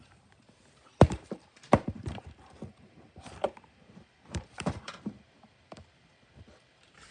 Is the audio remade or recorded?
remade